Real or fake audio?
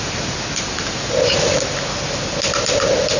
real